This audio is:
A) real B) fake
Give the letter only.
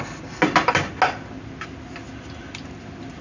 A